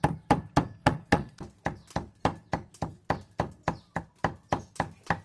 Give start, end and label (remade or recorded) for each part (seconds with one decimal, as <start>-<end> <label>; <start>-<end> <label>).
0.0-0.8 recorded; 0.8-1.4 remade; 1.4-5.2 recorded

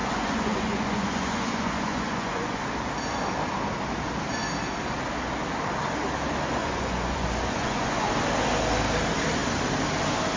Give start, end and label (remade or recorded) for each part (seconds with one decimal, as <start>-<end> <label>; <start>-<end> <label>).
0.0-2.6 remade; 2.6-6.6 recorded; 6.6-8.1 remade; 8.1-10.4 recorded